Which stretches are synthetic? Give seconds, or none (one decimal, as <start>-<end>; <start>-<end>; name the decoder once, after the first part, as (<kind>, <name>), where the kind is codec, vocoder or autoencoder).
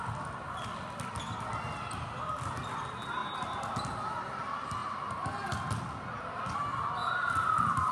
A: 7.0-7.9 (vocoder, BigVGAN v2)